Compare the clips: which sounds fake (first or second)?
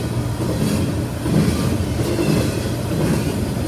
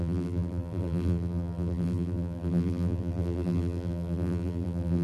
second